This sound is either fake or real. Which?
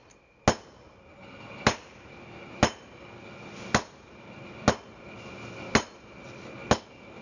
real